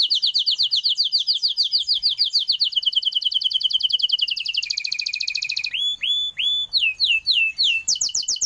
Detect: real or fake real